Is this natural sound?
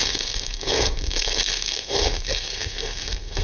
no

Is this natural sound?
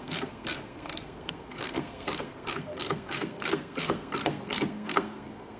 no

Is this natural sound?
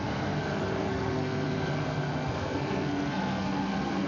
no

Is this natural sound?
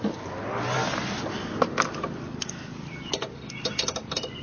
yes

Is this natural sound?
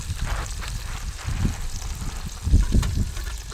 yes